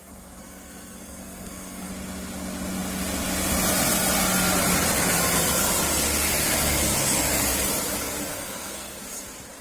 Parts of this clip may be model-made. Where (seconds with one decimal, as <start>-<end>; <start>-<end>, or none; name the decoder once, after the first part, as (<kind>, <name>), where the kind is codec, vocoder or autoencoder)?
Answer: 0.0-1.9 (codec, SNAC); 8.3-9.0